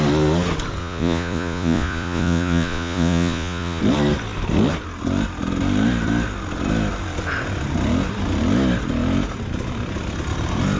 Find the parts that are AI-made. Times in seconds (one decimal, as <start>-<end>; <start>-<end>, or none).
0.8-3.8